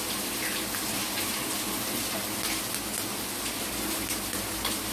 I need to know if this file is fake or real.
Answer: real